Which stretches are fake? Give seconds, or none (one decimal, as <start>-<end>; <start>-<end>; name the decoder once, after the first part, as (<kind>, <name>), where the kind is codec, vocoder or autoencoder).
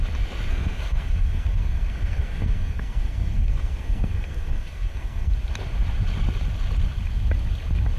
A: 0.5-5.3 (codec, SNAC)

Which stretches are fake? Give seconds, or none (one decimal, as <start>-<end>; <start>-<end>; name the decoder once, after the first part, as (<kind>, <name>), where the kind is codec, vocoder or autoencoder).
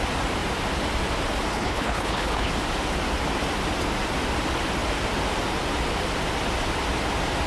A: 1.5-2.5 (codec, HILCodec)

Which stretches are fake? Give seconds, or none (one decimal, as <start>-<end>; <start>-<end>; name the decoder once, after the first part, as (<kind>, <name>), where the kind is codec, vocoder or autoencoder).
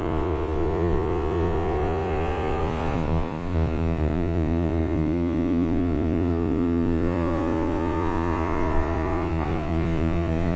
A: 0.0-10.6 (vocoder, Vocos)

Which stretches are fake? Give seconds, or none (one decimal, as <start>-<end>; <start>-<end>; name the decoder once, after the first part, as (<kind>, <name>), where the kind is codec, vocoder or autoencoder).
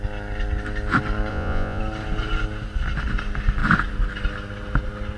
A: 1.3-1.8 (vocoder, Vocos)